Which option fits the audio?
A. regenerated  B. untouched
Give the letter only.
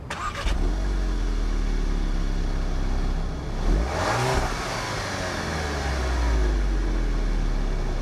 B